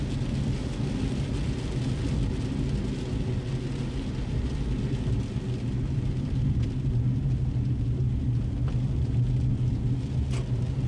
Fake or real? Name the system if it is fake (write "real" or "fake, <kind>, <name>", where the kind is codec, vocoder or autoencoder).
real